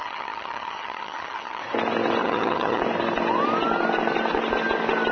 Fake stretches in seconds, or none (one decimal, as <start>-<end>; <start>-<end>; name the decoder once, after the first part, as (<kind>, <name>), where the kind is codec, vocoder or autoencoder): 0.0-1.6 (vocoder, HiFi-GAN); 2.2-2.8